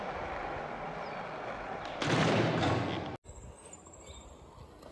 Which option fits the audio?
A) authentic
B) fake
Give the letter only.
A